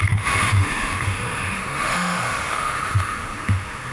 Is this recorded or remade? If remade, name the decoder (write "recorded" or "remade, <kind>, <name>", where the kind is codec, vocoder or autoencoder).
remade, autoencoder, DAC-VAE